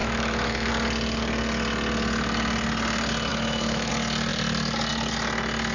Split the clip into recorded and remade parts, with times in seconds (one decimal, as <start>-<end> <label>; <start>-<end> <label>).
0.0-0.7 remade; 0.7-3.3 recorded; 3.3-3.9 remade; 3.9-5.7 recorded